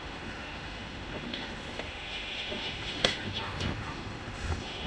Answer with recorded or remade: remade